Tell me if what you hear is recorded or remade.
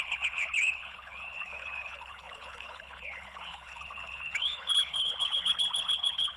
remade